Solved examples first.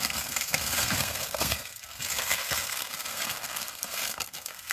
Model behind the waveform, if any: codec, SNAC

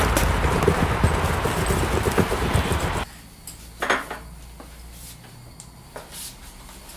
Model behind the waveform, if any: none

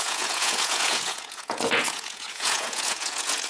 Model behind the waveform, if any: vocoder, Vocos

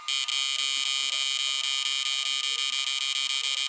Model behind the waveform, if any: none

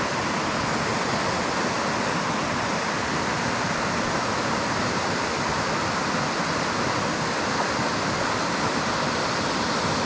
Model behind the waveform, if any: none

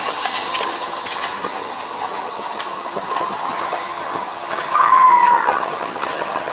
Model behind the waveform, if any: vocoder, HiFi-GAN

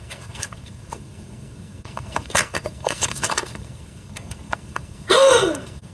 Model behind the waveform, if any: codec, SNAC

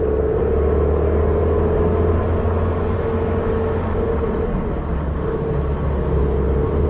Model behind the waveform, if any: none